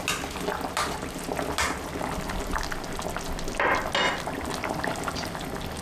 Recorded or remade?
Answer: recorded